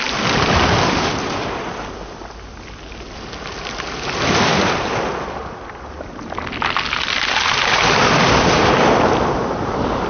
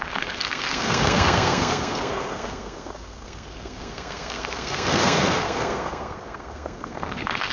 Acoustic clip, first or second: first